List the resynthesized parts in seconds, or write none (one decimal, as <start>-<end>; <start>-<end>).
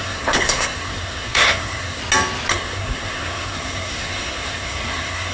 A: 0.0-2.0; 2.5-5.3